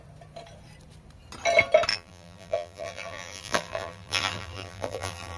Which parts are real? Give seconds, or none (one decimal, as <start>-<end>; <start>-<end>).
0.0-1.9